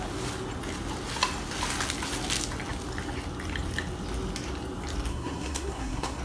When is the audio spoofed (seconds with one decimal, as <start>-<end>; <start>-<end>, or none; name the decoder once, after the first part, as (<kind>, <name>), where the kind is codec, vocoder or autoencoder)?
5.1-6.2 (codec, SNAC)